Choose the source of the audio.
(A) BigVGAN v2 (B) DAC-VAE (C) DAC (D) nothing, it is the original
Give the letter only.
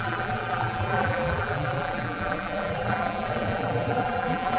A